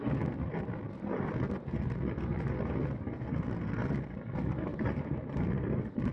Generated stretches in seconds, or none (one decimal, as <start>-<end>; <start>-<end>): 4.7-5.4

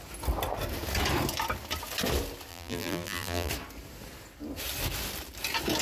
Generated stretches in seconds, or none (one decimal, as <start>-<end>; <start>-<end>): 2.5-3.5

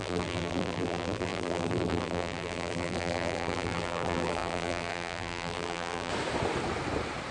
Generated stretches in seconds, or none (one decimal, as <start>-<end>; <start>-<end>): 0.0-6.1

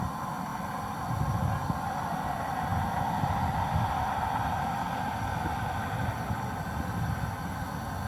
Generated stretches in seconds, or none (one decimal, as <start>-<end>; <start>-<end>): none

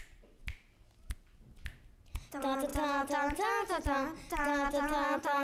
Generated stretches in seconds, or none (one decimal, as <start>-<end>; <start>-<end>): 0.0-0.4; 1.7-2.7; 4.3-5.4